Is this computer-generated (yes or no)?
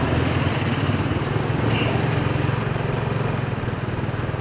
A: no